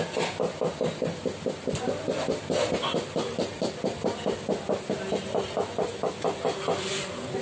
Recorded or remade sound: recorded